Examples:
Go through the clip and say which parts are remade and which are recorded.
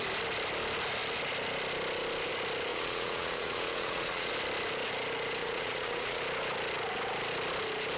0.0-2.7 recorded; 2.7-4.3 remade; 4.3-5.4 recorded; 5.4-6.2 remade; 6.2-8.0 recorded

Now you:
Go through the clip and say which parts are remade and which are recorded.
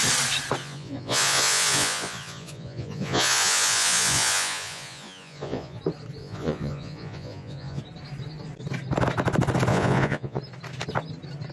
0.0-0.6 recorded; 0.6-5.8 remade; 5.8-6.2 recorded; 6.2-7.8 remade; 7.8-9.7 recorded; 9.7-10.4 remade; 10.4-11.5 recorded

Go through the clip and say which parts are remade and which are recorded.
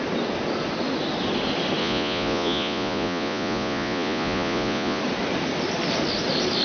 0.0-1.8 recorded; 1.8-5.0 remade; 5.0-6.6 recorded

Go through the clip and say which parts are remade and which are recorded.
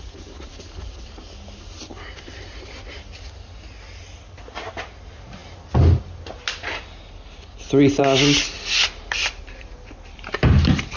0.0-11.0 recorded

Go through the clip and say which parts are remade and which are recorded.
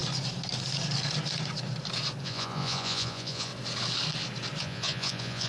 0.0-2.2 recorded; 2.2-3.5 remade; 3.5-4.6 recorded; 4.6-5.5 remade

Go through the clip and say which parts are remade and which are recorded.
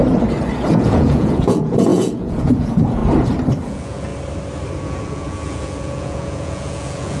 0.0-0.7 recorded; 0.7-3.0 remade; 3.0-3.6 recorded; 3.6-4.1 remade; 4.1-4.8 recorded; 4.8-7.2 remade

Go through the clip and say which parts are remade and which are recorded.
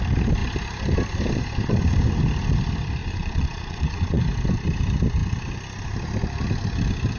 0.0-3.0 recorded; 3.0-4.2 remade; 4.2-7.2 recorded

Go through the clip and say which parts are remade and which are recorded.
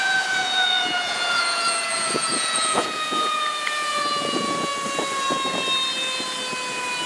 0.0-4.7 remade; 4.7-7.1 recorded